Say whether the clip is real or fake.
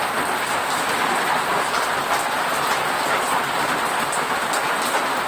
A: real